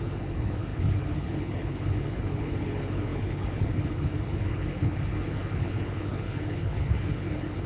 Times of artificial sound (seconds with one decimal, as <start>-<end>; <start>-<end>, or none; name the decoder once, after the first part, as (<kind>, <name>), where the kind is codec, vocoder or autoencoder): 0.0-7.7 (codec, HILCodec)